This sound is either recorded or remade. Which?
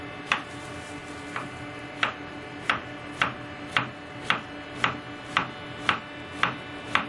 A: recorded